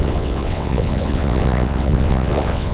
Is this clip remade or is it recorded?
remade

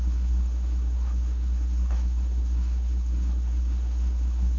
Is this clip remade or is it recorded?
remade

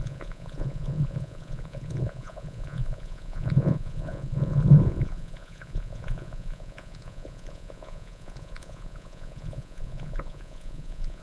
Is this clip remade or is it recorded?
remade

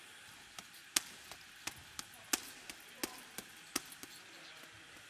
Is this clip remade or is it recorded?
recorded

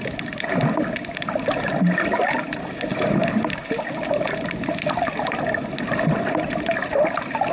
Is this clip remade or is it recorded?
recorded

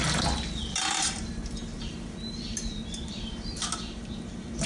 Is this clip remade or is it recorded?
remade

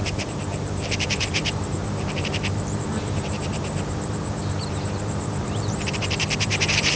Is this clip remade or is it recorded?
remade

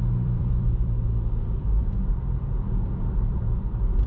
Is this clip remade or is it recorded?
remade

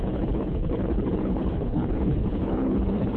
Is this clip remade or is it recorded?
remade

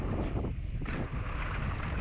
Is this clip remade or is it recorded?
recorded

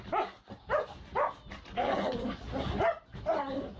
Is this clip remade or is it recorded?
recorded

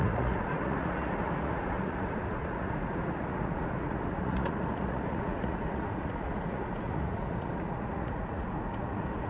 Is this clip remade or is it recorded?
remade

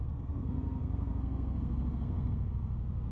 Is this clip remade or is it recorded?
remade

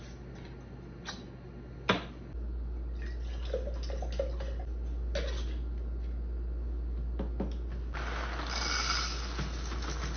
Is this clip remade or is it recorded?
recorded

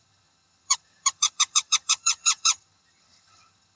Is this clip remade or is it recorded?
remade